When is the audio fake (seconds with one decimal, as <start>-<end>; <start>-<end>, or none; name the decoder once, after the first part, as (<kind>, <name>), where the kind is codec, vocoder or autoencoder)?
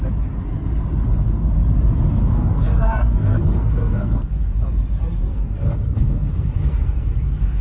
2.2-4.5 (codec, SNAC); 5.3-7.6